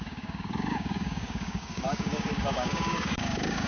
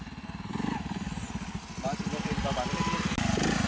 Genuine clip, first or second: second